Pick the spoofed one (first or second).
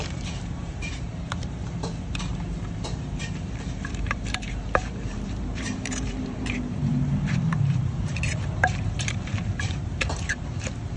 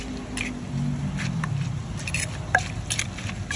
first